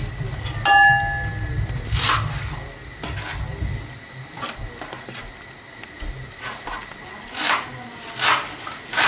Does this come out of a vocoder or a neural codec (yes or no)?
no